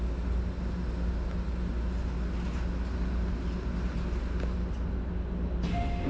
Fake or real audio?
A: real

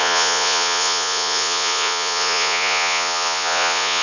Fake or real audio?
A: fake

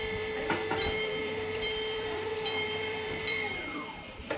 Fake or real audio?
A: fake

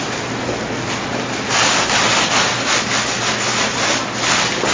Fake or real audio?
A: real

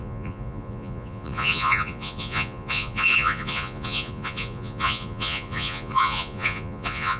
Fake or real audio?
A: fake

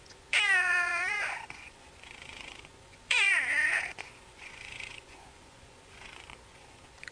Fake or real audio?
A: fake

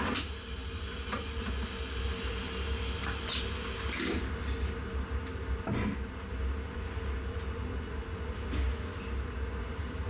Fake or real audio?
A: real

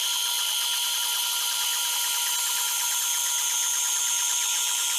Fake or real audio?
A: real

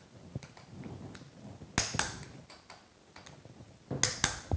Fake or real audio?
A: real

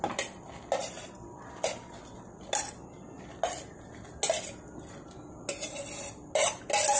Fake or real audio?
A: real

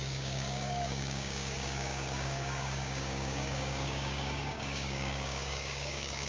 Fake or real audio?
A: fake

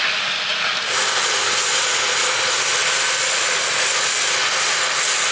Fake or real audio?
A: real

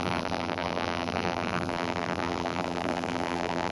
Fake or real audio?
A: fake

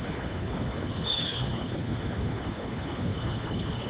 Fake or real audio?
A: fake